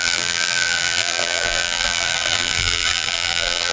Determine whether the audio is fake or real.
fake